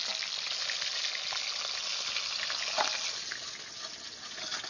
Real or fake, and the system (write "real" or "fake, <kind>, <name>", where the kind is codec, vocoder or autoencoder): real